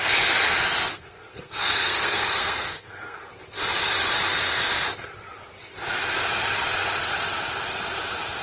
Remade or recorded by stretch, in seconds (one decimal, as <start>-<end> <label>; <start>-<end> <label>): 0.0-0.9 recorded; 0.9-3.2 remade; 3.2-8.4 recorded